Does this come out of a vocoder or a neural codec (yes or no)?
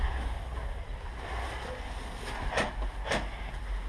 no